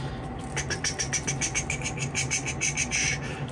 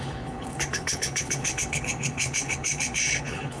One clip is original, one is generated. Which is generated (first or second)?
second